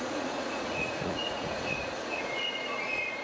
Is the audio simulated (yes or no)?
yes